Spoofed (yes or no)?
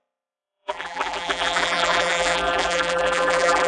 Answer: yes